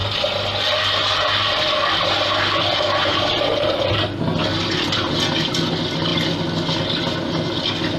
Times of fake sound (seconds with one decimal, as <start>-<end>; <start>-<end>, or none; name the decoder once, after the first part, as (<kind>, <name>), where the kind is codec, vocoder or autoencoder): none